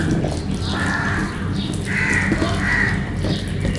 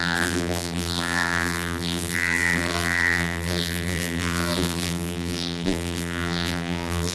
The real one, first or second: first